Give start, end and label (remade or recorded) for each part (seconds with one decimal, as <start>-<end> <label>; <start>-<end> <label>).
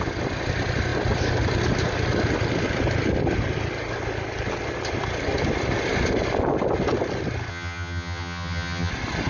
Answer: 0.0-7.5 recorded; 7.5-8.9 remade; 8.9-9.3 recorded